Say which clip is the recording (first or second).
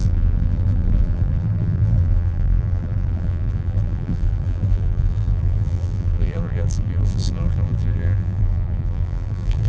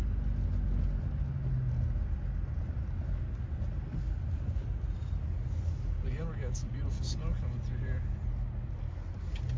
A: second